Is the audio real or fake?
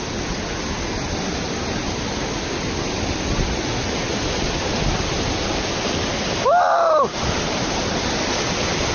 real